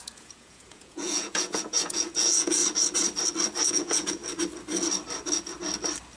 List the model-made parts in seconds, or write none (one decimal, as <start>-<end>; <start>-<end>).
0.0-2.6; 3.7-4.2